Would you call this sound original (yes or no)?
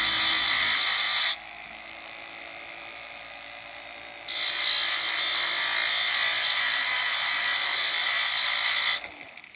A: yes